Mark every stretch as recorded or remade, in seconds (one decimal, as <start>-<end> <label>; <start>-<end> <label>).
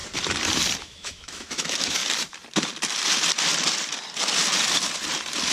0.0-0.8 recorded; 0.8-2.0 remade; 2.0-5.5 recorded